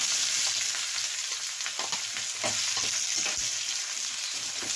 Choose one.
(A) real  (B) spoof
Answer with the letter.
A